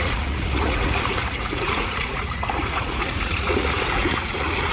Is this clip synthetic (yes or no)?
yes